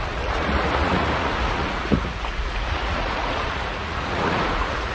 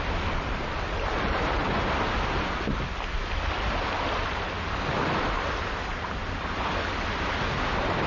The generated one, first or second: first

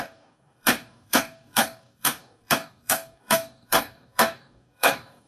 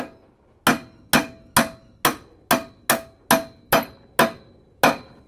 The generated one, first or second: first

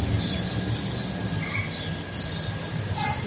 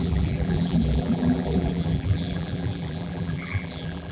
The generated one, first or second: second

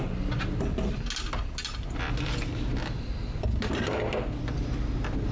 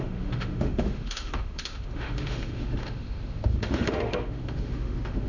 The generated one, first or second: second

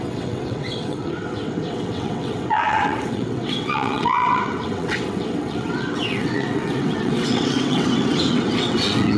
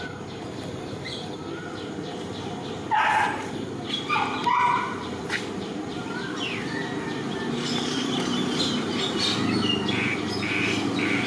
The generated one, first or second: first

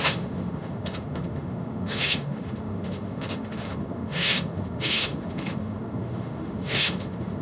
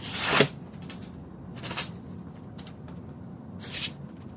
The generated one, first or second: first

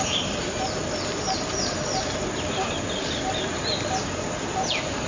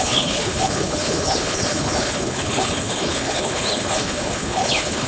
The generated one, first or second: second